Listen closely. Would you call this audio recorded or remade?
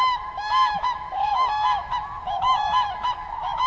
remade